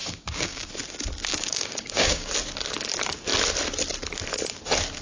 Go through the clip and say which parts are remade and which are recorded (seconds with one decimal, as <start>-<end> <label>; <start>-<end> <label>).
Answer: 0.0-0.7 remade; 0.7-1.3 recorded; 1.3-2.3 remade; 2.3-5.0 recorded